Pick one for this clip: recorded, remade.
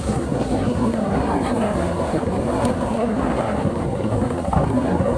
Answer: remade